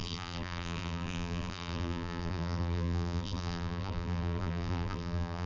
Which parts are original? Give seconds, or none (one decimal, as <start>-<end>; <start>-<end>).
none